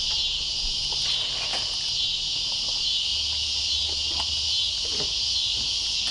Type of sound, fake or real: real